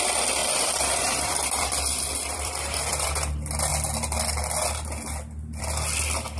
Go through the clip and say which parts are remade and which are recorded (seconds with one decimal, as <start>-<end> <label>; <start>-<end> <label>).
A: 0.0-0.4 recorded; 0.4-2.9 remade; 2.9-6.4 recorded